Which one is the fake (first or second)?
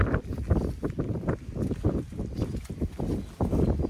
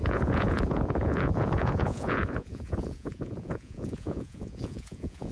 second